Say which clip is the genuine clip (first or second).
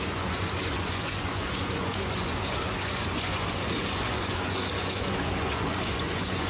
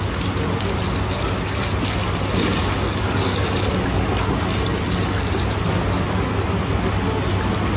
second